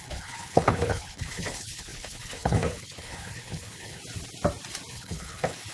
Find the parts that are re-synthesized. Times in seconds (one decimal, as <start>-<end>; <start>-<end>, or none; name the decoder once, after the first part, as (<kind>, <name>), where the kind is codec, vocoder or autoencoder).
0.0-4.0 (codec, HILCodec); 4.9-5.7